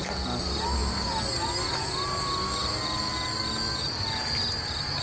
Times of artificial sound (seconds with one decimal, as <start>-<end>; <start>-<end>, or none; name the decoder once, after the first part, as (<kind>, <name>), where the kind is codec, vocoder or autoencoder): none